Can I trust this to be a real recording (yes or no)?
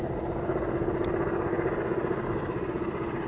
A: yes